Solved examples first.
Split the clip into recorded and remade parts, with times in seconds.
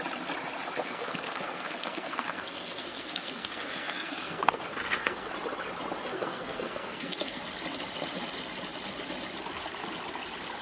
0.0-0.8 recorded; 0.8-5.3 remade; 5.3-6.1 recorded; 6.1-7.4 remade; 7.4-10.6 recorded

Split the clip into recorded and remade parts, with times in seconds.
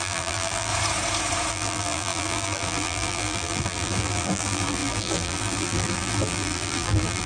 0.0-0.7 remade; 0.7-1.5 recorded; 1.5-7.3 remade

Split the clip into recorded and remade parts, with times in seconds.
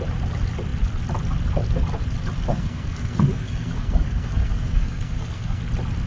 0.0-2.5 recorded; 2.5-5.6 remade; 5.6-6.1 recorded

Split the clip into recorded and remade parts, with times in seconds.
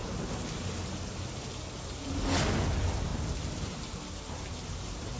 0.0-0.8 remade; 0.8-3.1 recorded; 3.1-3.9 remade; 3.9-5.2 recorded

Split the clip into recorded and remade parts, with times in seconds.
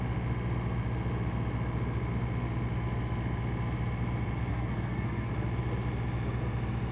0.0-4.5 recorded; 4.5-5.3 remade; 5.3-6.9 recorded